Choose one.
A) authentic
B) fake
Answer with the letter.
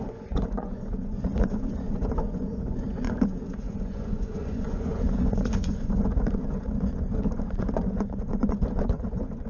B